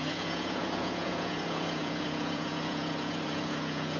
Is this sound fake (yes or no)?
yes